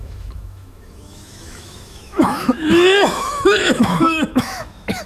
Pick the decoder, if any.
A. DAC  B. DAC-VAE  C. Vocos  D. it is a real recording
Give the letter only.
B